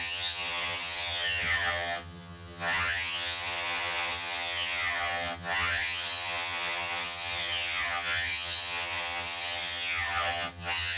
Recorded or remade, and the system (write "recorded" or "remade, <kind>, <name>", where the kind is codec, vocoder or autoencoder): remade, vocoder, HiFi-GAN